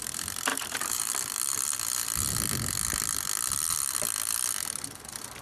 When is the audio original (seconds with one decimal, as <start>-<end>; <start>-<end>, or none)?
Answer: 0.0-0.5; 1.1-5.4